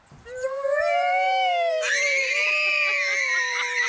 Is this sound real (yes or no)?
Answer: no